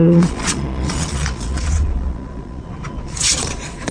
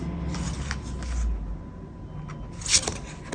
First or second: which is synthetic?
first